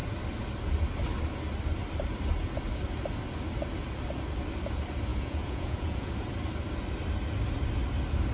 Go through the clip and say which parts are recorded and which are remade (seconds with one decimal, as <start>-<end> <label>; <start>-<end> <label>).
0.0-5.1 recorded; 5.1-6.1 remade; 6.1-8.3 recorded